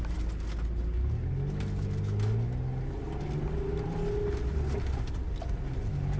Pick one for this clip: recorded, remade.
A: recorded